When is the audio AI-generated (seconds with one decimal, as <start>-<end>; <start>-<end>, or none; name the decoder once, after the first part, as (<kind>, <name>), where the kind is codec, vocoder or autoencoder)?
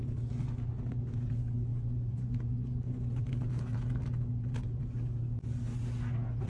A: 1.7-3.2 (vocoder, Vocos)